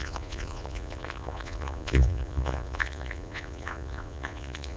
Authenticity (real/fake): fake